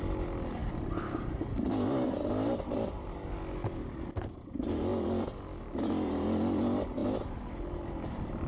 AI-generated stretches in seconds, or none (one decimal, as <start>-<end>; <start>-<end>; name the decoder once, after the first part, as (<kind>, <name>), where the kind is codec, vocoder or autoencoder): none